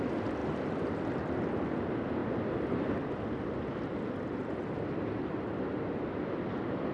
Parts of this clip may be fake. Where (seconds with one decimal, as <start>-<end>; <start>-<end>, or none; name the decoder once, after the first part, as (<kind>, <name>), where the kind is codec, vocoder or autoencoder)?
2.2-4.4 (vocoder, BigVGAN v2)